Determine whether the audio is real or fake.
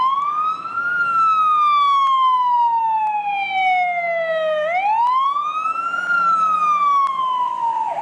real